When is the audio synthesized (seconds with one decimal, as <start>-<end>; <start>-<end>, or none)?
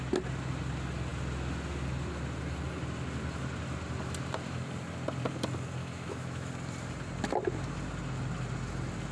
5.8-6.5